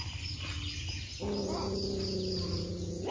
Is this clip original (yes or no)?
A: yes